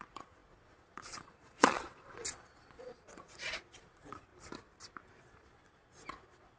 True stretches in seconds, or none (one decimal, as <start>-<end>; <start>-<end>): 4.3-5.2